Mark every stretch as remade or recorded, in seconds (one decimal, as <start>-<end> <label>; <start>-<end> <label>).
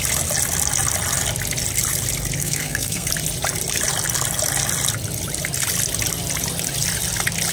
0.0-2.4 recorded; 2.4-3.1 remade; 3.1-7.5 recorded